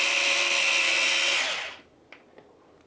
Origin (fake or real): real